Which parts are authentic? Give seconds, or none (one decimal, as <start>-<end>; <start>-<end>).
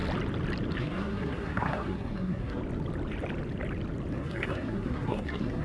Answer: 0.0-0.8; 2.6-4.1